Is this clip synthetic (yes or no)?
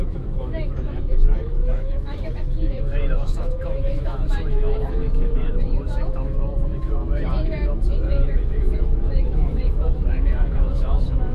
yes